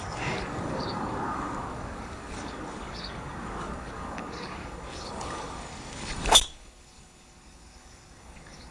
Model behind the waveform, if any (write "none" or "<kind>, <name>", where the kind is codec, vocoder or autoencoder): codec, DAC